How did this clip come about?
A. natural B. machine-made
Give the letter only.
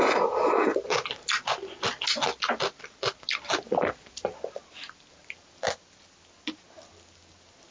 A